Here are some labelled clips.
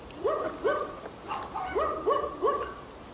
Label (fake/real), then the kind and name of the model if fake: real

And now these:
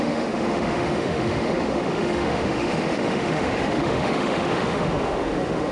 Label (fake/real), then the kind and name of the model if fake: fake, autoencoder, DAC-VAE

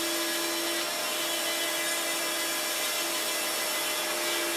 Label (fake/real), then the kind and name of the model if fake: real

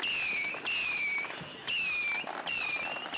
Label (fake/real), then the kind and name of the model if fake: real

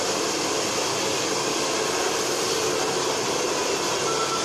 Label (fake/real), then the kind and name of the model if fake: real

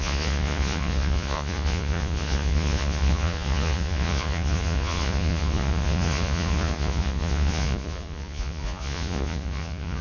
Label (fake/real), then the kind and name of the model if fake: fake, vocoder, Vocos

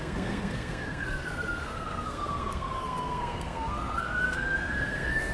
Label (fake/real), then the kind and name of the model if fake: fake, codec, SNAC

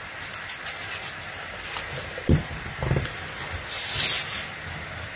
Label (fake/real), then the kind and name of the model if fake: real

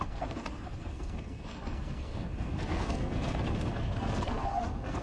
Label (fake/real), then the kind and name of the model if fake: fake, codec, SNAC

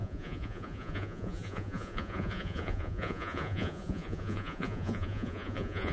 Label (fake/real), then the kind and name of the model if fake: fake, vocoder, Vocos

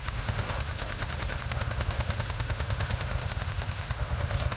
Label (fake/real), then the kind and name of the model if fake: fake, autoencoder, DAC-VAE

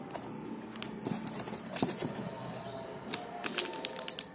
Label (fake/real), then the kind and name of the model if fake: real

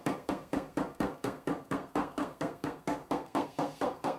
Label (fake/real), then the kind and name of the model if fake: fake, codec, SNAC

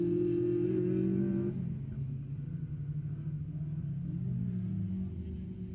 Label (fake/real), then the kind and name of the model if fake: real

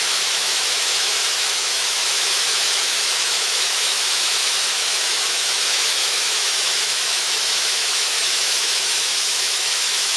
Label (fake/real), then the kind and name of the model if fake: fake, autoencoder, DAC-VAE